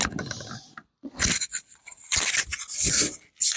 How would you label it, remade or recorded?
recorded